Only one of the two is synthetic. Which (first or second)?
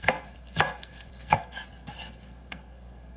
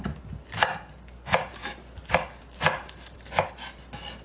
first